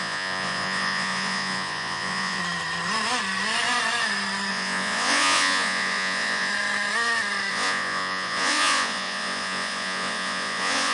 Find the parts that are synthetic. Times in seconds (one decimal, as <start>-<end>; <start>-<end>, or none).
0.0-2.4; 4.5-6.5; 7.5-10.9